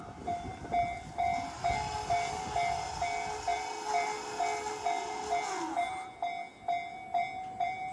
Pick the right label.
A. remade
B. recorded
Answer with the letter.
B